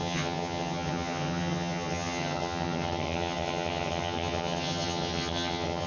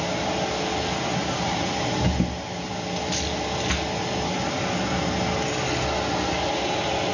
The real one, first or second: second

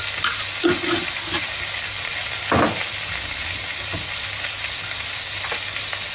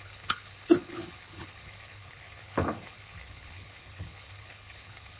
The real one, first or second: first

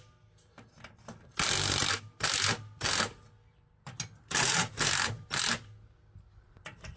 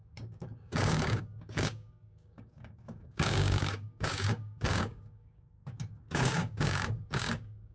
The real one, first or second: first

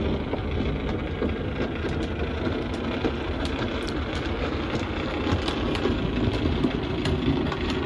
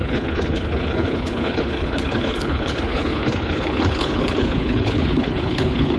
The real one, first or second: first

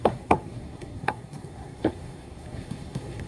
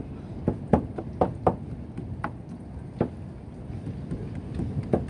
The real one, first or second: second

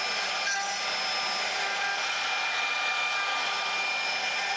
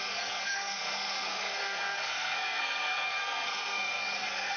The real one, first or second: first